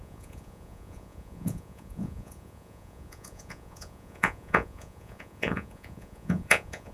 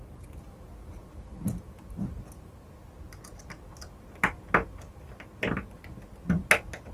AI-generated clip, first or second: first